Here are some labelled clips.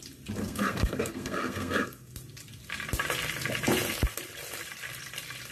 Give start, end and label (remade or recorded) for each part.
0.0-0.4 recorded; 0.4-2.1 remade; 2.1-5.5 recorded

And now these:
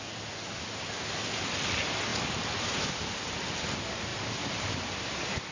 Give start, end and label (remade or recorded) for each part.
0.0-4.1 recorded; 4.1-4.8 remade; 4.8-5.5 recorded

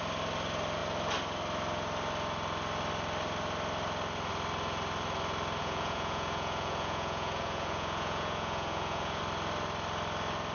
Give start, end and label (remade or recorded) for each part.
0.0-5.6 recorded; 5.6-9.2 remade; 9.2-10.5 recorded

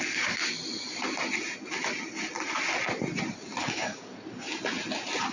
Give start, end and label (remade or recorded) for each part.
0.0-0.4 remade; 0.4-3.6 recorded; 3.6-4.1 remade; 4.1-5.3 recorded

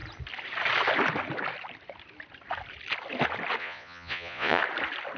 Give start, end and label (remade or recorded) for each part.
0.0-3.6 recorded; 3.6-4.6 remade; 4.6-5.2 recorded

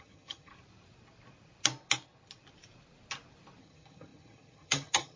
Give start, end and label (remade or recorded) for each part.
0.0-0.5 remade; 0.5-3.6 recorded; 3.6-5.2 remade